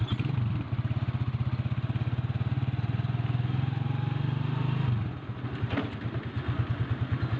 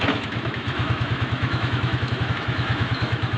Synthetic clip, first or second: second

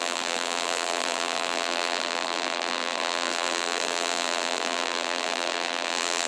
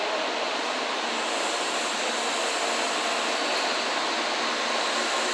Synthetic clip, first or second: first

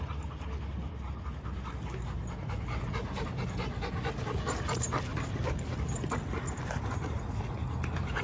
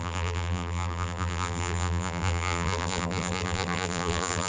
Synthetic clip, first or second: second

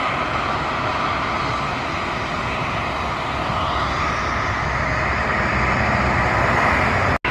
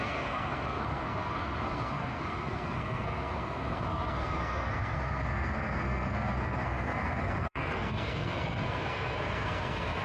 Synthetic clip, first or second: second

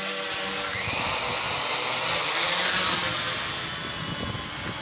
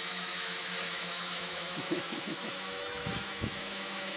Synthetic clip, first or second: second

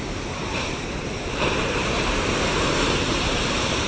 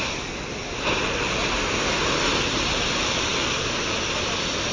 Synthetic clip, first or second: first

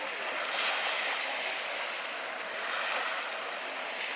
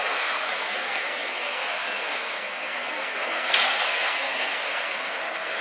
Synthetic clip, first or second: second